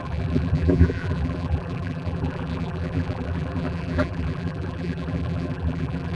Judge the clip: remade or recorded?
remade